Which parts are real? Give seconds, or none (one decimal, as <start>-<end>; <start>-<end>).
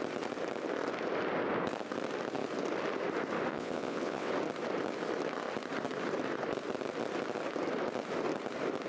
0.0-3.5; 4.3-8.9